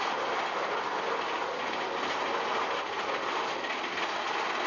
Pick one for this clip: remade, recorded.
recorded